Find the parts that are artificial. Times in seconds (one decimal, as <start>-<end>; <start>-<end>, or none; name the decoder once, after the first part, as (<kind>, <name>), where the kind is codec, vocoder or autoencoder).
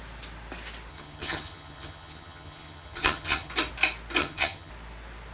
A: 0.9-3.5 (vocoder, HiFi-GAN); 4.2-4.7